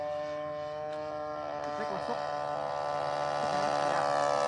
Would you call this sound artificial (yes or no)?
no